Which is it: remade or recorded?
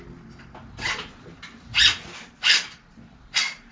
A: recorded